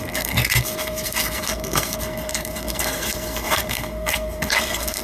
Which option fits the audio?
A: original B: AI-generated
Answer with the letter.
B